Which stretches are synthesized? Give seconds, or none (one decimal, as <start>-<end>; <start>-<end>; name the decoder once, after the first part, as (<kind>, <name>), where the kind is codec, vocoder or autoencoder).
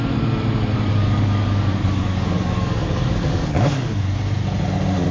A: 0.9-4.0 (codec, DAC)